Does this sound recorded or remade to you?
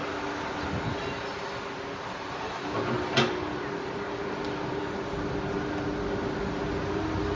recorded